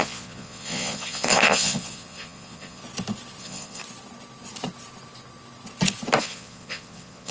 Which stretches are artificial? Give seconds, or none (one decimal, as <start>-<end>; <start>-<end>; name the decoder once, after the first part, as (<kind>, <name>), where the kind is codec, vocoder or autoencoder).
0.0-2.8 (vocoder, Vocos); 3.4-3.8; 6.2-7.3

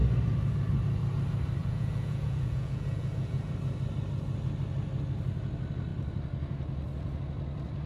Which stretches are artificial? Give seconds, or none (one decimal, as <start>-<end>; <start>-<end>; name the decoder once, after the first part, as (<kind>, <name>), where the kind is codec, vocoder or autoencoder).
1.6-3.5 (vocoder, Vocos)